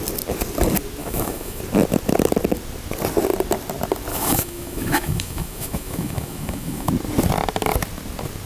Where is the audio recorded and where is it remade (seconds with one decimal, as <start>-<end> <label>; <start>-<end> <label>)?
0.0-1.0 recorded; 1.0-1.6 remade; 1.6-4.1 recorded; 4.1-6.9 remade; 6.9-8.5 recorded